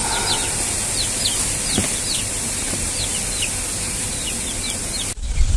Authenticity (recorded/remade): recorded